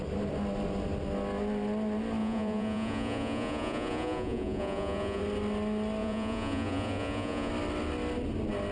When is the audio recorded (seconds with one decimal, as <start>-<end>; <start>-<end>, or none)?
0.0-2.2; 5.2-6.0; 7.5-8.7